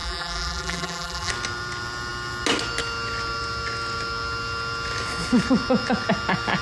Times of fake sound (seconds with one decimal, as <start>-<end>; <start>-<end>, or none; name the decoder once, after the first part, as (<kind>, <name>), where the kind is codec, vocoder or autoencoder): 0.0-1.3 (vocoder, BigVGAN v2)